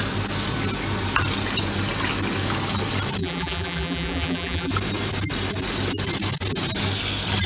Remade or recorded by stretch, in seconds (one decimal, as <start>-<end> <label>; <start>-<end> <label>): 0.0-3.2 recorded; 3.2-4.7 remade; 4.7-7.5 recorded